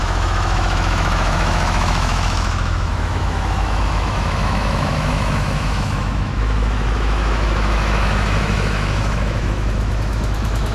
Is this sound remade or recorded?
remade